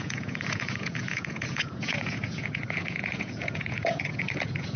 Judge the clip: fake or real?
fake